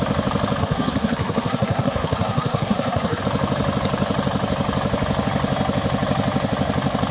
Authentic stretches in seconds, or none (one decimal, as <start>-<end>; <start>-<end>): 0.0-0.6; 3.2-7.1